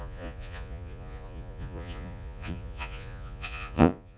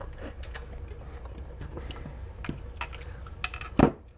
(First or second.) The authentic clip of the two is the second